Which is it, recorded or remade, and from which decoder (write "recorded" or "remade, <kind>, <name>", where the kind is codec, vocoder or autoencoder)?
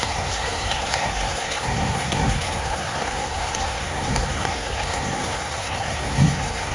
remade, codec, SNAC